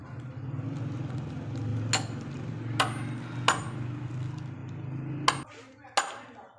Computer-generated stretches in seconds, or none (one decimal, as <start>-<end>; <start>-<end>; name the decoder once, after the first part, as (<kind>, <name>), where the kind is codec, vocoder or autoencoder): none